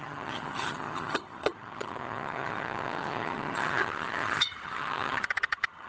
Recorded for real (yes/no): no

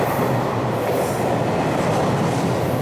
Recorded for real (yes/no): yes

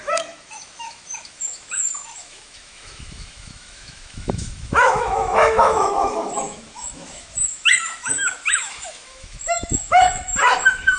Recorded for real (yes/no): no